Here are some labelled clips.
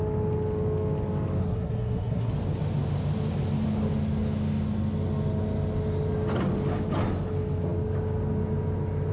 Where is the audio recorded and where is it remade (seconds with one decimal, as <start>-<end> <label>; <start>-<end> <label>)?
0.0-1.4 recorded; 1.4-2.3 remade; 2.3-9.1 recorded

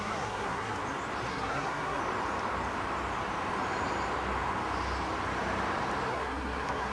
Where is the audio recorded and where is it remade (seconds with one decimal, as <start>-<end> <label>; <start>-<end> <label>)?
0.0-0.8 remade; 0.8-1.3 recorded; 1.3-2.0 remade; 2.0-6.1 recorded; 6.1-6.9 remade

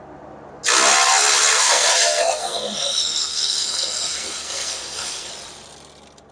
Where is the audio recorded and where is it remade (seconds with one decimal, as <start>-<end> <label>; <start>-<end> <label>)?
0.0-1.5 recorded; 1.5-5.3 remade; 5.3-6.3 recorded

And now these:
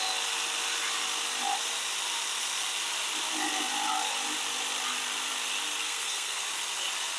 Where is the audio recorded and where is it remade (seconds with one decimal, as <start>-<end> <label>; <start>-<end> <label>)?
0.0-5.8 recorded; 5.8-6.4 remade; 6.4-7.2 recorded

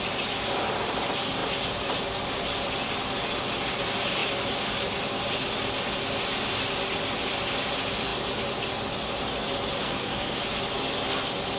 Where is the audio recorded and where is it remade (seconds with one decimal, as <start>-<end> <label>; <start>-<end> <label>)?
0.0-9.8 recorded; 9.8-10.4 remade; 10.4-11.6 recorded

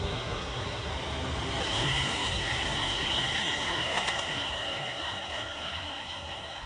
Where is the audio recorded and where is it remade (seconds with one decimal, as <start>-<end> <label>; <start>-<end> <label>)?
0.0-0.9 remade; 0.9-1.6 recorded; 1.6-6.7 remade